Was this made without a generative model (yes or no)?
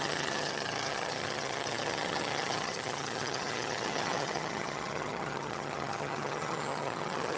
no